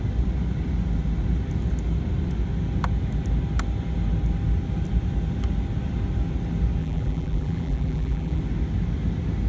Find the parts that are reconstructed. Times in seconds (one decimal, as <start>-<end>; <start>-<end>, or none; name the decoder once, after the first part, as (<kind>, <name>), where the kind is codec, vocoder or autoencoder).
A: 6.8-8.4 (vocoder, BigVGAN v2)